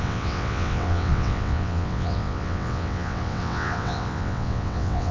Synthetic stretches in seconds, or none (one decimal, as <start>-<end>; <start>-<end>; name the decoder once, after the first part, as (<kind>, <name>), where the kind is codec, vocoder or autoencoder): 0.0-5.1 (vocoder, WaveNeXt)